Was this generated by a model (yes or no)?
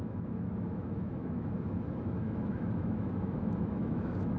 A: yes